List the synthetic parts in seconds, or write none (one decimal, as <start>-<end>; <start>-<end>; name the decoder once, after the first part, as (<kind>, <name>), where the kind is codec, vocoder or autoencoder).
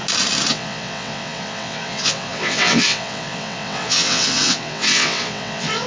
0.5-5.9 (vocoder, WaveNeXt)